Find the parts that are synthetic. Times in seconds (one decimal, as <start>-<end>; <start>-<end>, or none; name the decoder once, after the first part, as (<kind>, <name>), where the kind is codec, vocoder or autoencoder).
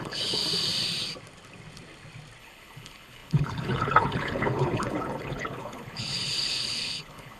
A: 0.0-0.4 (codec, HILCodec); 2.4-7.4